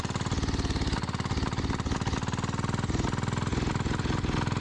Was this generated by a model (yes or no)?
no